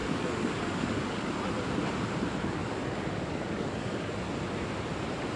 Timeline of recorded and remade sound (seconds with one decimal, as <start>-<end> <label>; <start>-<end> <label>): 0.0-1.3 remade; 1.3-2.6 recorded; 2.6-4.1 remade; 4.1-5.4 recorded